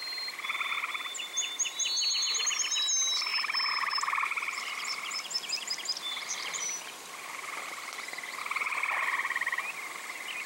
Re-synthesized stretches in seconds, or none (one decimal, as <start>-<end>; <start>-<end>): 3.3-8.4